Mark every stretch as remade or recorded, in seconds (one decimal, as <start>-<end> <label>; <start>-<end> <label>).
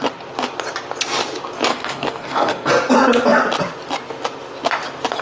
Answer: 0.0-1.7 recorded; 1.7-2.7 remade; 2.7-5.2 recorded